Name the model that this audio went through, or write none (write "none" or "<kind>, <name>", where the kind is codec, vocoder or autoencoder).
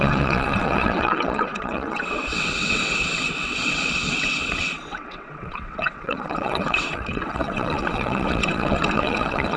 vocoder, WaveNeXt